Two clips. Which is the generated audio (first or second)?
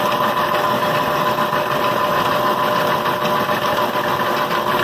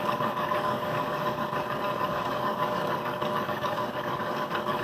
second